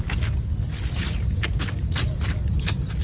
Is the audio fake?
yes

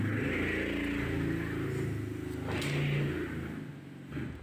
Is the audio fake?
no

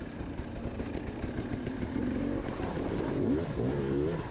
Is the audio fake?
yes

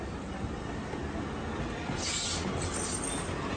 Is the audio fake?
no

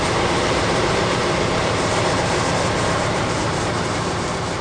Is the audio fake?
yes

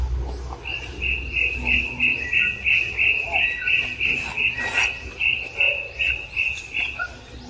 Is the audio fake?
no